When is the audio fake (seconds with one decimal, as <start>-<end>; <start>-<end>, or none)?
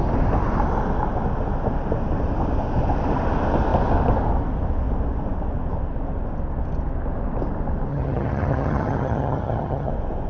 7.9-9.9